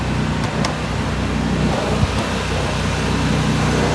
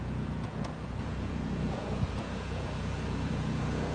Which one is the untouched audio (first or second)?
first